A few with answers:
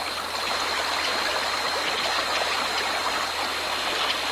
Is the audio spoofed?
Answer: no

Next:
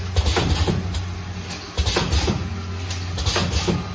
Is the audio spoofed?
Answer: no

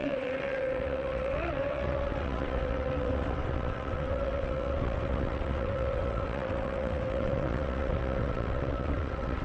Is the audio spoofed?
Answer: yes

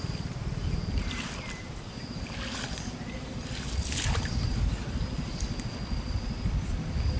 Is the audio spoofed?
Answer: no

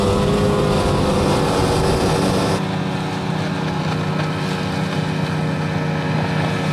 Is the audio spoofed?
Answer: no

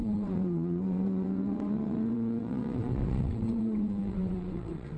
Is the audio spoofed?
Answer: yes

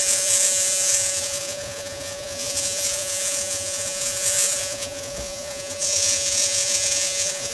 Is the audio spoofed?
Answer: yes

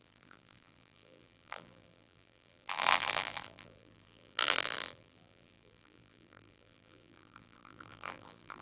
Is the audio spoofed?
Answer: yes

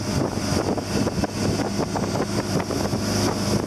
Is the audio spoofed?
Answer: no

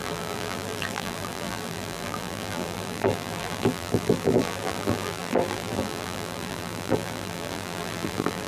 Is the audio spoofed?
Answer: yes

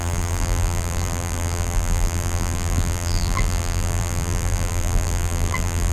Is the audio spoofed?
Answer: yes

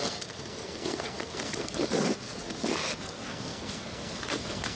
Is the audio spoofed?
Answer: yes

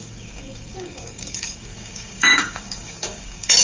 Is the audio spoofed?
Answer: yes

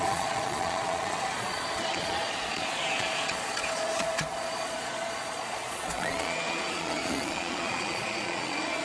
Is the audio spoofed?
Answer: yes